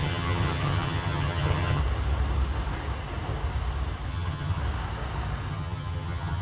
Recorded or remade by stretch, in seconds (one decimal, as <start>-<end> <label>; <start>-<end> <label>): 0.0-1.8 remade; 1.8-4.1 recorded; 4.1-4.6 remade; 4.6-5.5 recorded; 5.5-6.4 remade